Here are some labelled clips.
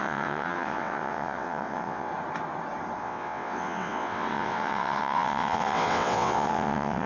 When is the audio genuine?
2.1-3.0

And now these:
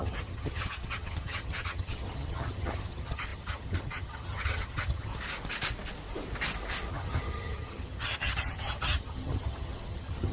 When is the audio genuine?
5.1-6.9

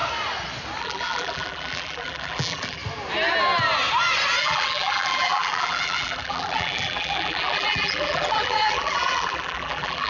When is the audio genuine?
0.0-0.8; 2.8-4.4

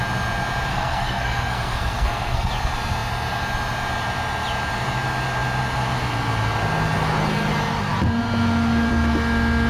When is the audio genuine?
0.0-0.7; 2.5-9.7